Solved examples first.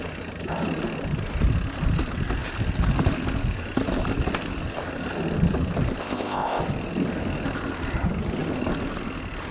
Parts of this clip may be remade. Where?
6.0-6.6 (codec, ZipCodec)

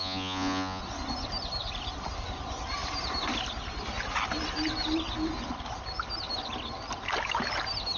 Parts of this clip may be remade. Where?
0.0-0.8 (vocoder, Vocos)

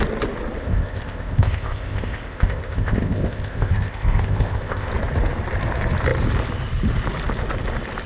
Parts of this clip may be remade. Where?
0.6-4.9 (codec, ZipCodec)